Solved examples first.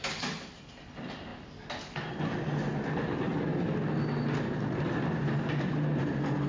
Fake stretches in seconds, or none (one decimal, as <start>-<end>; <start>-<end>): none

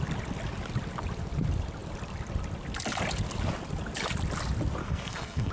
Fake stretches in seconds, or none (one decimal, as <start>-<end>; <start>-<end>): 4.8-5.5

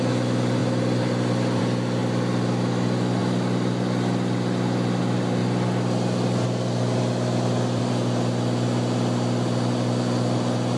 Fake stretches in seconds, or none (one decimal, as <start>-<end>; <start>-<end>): 0.6-1.6; 2.0-2.7; 5.4-7.9

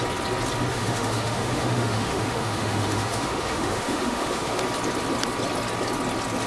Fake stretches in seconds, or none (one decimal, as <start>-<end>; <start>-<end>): 0.7-4.6

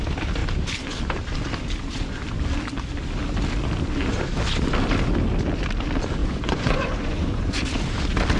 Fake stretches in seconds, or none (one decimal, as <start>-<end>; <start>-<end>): 6.2-7.6

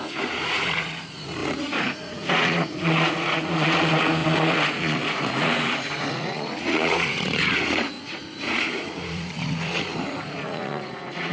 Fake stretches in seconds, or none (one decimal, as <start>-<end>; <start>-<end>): 0.0-11.3

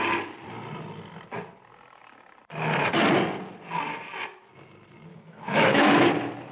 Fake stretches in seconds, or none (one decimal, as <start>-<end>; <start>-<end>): 5.1-5.9

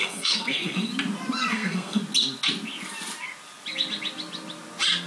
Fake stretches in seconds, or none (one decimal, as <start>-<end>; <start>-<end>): 0.0-0.9; 1.5-2.0